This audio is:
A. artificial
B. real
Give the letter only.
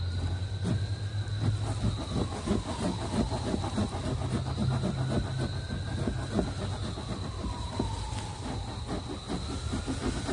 B